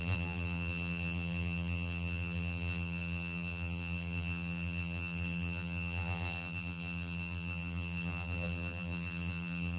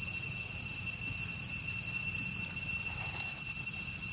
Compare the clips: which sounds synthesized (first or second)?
first